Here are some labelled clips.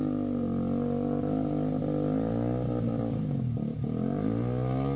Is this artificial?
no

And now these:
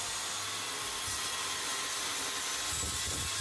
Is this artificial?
no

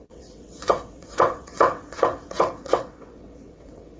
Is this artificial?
yes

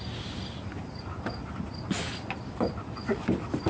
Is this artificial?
no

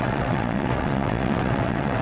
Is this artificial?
yes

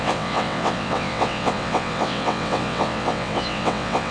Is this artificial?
yes